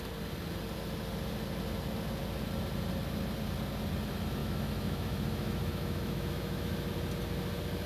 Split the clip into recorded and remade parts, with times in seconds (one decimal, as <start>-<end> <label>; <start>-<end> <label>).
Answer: 0.0-4.4 recorded; 4.4-6.9 remade; 6.9-7.9 recorded